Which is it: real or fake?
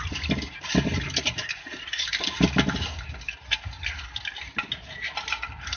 real